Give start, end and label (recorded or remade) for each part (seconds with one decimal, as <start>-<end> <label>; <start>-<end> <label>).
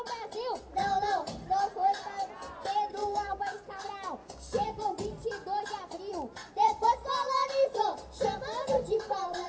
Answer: 0.0-3.0 recorded; 3.0-3.8 remade; 3.8-4.2 recorded; 4.2-4.8 remade; 4.8-9.5 recorded